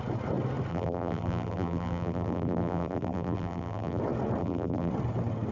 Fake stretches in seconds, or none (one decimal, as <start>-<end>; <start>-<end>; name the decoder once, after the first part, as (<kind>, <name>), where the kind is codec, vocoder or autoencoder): 0.7-4.0 (vocoder, BigVGAN v2); 4.4-4.9